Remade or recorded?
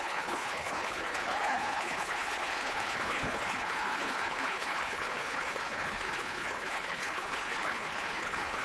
remade